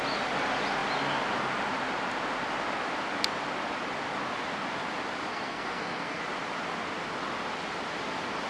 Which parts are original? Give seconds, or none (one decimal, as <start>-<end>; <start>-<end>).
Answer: 0.0-5.3; 6.2-8.5